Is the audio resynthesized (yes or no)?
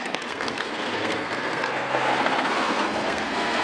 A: yes